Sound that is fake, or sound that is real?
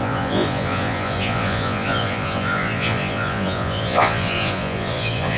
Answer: fake